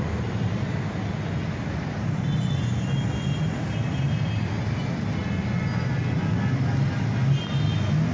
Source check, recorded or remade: recorded